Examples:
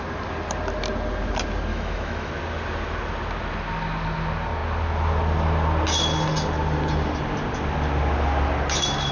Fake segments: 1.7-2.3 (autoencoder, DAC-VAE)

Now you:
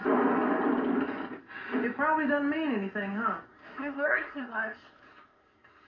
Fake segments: 3.5-5.9 (codec, SNAC)

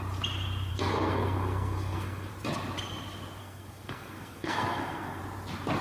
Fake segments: 0.7-2.3 (codec, SNAC); 3.4-5.2